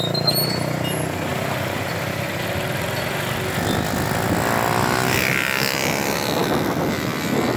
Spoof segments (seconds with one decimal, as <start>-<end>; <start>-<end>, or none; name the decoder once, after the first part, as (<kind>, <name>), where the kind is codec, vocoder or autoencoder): 1.3-2.3 (vocoder, BigVGAN v2); 6.4-6.9